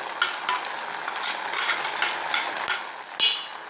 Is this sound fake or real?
real